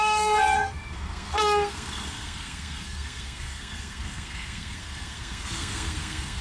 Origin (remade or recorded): remade